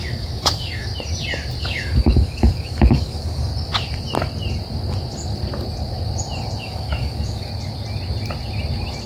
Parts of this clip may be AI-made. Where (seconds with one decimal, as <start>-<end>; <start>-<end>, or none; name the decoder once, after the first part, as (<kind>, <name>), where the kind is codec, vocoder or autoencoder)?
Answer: 0.0-0.9 (codec, DAC); 1.6-3.5; 6.6-7.5